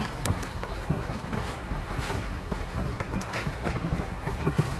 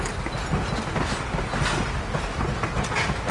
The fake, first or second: first